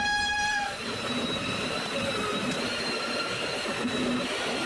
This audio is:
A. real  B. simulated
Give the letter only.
B